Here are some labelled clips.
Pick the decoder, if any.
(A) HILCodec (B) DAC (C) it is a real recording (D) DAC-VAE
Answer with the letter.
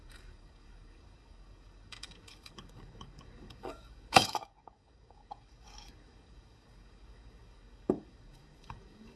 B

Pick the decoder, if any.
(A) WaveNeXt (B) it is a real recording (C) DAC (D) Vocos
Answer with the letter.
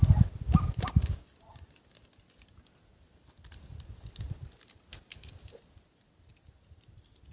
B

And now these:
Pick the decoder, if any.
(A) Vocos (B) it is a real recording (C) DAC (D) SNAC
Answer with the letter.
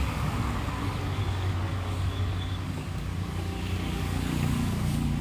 C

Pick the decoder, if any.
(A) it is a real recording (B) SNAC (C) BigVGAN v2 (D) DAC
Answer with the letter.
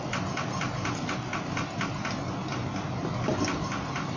A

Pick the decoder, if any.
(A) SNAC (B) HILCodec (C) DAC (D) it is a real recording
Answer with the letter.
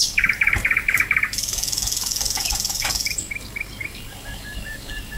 C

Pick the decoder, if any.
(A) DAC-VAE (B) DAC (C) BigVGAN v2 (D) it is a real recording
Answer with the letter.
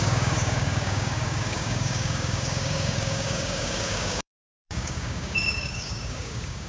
B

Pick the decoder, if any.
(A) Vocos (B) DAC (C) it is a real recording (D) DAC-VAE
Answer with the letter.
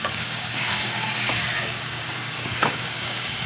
B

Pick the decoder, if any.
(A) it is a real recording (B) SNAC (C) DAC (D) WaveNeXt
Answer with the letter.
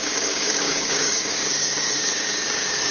C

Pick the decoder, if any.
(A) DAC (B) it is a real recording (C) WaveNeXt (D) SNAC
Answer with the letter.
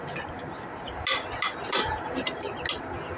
B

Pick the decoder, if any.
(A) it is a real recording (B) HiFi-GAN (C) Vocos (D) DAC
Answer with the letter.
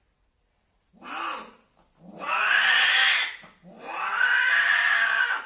A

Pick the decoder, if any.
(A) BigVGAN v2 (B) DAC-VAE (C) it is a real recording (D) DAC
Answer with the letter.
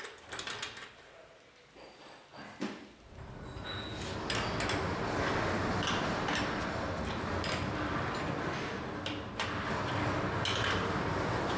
C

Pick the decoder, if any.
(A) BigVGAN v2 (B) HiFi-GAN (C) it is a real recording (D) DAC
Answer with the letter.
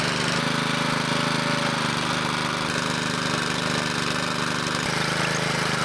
C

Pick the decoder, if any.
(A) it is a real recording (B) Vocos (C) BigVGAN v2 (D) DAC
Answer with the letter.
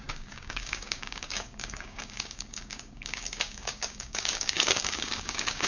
D